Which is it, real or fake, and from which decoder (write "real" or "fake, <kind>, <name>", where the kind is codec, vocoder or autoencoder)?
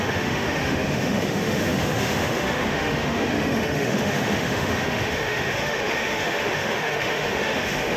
fake, autoencoder, DAC-VAE